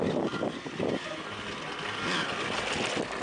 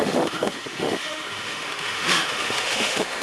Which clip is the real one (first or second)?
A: first